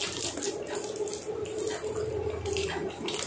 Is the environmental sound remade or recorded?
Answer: recorded